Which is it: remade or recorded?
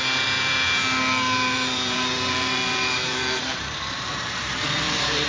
remade